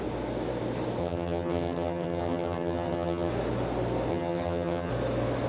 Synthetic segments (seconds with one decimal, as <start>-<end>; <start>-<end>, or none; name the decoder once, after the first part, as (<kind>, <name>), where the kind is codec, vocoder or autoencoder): 1.0-3.3 (vocoder, HiFi-GAN); 4.1-4.9